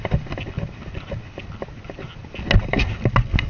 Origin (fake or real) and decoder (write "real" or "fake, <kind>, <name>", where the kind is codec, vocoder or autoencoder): real